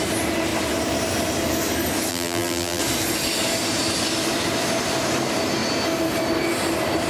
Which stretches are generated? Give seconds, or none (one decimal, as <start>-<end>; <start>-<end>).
2.1-2.8